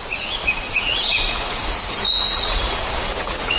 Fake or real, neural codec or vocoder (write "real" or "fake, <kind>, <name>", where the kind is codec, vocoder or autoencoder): fake, vocoder, Vocos